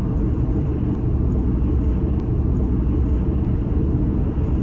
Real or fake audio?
real